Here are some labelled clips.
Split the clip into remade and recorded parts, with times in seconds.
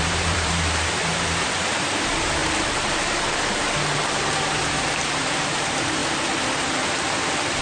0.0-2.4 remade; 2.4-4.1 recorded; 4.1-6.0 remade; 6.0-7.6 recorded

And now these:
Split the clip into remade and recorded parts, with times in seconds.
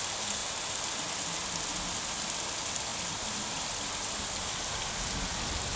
0.0-0.4 recorded; 0.4-1.0 remade; 1.0-2.9 recorded; 2.9-4.5 remade; 4.5-5.8 recorded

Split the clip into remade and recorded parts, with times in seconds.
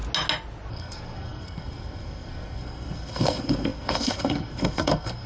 0.0-0.7 recorded; 0.7-5.3 remade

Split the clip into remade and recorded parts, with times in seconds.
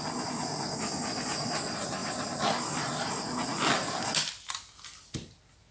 0.0-5.7 recorded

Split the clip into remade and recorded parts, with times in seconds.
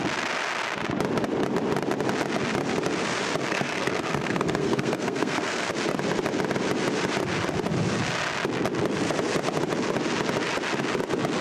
0.0-3.5 recorded; 3.5-5.7 remade; 5.7-11.4 recorded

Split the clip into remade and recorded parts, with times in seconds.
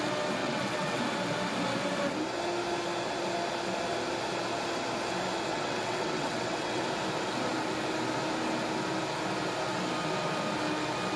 0.0-0.4 recorded; 0.4-1.0 remade; 1.0-5.5 recorded; 5.5-6.8 remade; 6.8-11.2 recorded